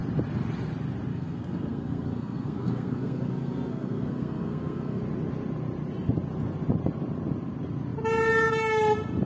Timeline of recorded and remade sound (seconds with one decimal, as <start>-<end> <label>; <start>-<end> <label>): 0.0-1.1 recorded; 1.1-5.0 remade; 5.0-9.3 recorded